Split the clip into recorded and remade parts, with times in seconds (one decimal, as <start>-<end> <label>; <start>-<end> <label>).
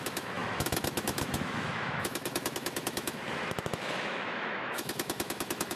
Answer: 0.0-5.8 remade